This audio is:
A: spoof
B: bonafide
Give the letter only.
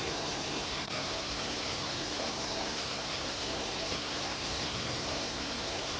A